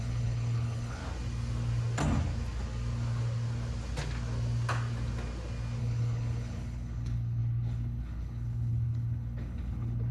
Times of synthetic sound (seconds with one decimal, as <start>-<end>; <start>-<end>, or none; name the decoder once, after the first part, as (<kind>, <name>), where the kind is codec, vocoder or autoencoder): 0.0-1.0 (codec, HILCodec); 5.8-10.1